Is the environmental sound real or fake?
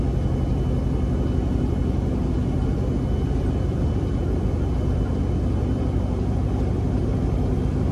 real